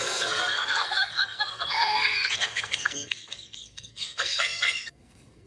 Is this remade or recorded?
remade